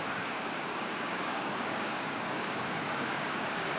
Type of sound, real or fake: fake